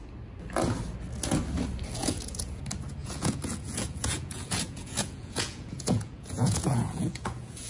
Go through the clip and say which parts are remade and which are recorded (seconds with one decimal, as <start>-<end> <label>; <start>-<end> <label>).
0.0-2.0 recorded; 2.0-2.6 remade; 2.6-3.0 recorded; 3.0-7.7 remade